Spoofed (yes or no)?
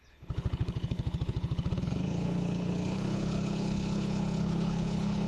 yes